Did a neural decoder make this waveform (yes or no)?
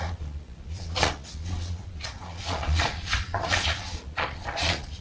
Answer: yes